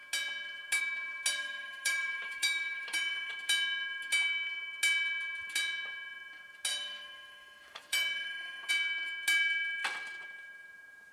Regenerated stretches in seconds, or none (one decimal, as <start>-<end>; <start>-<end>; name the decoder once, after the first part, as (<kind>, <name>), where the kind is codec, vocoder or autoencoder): 1.4-3.3 (autoencoder, DAC-VAE); 6.7-8.7